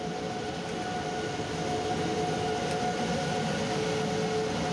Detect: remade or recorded recorded